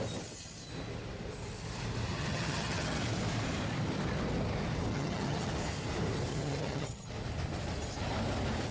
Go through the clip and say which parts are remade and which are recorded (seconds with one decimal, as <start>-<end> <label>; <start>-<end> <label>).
0.0-2.1 recorded; 2.1-3.0 remade; 3.0-4.9 recorded; 4.9-5.5 remade; 5.5-6.3 recorded; 6.3-7.1 remade; 7.1-8.7 recorded